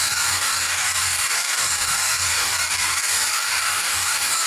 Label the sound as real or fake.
fake